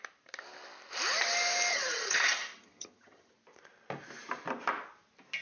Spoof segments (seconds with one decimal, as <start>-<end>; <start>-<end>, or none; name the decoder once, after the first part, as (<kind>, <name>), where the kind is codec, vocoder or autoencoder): 1.7-3.3 (vocoder, HiFi-GAN)